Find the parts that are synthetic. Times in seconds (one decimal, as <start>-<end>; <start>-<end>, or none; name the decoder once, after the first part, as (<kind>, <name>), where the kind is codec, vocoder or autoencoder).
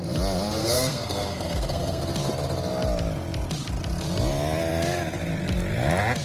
0.6-2.0 (codec, SNAC)